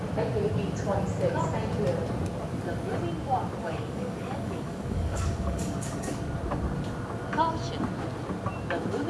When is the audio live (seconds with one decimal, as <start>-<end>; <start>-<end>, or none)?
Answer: 0.0-3.6; 6.2-9.1